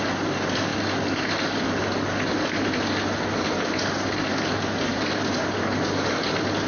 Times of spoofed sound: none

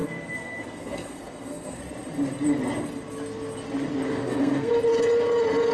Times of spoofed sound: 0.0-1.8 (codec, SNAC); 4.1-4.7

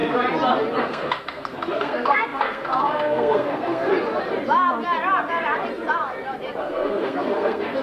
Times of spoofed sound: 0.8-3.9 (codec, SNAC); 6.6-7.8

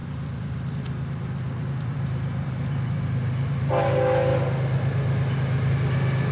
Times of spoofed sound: 0.0-3.8 (vocoder, BigVGAN v2)